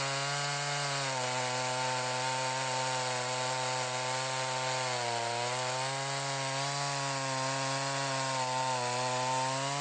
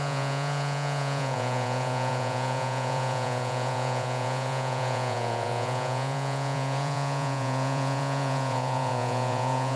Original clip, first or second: first